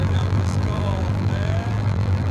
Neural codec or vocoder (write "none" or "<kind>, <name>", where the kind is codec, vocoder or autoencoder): vocoder, BigVGAN v2